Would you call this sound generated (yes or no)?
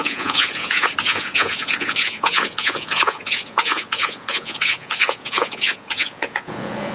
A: yes